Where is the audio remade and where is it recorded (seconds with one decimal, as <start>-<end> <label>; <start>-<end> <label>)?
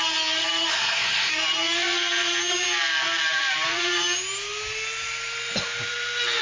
0.0-0.7 recorded; 0.7-1.3 remade; 1.3-6.4 recorded